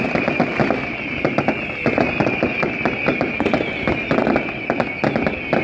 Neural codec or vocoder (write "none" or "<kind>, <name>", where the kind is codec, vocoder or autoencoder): none